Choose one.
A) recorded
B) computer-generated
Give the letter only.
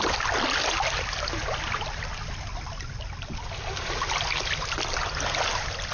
A